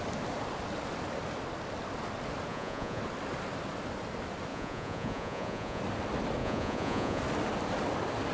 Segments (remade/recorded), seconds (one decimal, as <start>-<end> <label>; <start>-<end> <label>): 0.0-2.5 recorded; 2.5-3.0 remade; 3.0-4.5 recorded; 4.5-5.8 remade; 5.8-6.4 recorded; 6.4-7.2 remade; 7.2-8.3 recorded